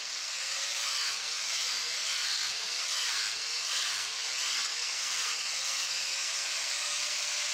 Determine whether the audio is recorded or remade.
remade